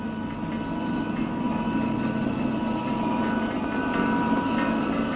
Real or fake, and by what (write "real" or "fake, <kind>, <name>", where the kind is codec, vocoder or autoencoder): real